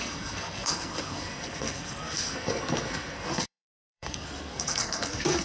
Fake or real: fake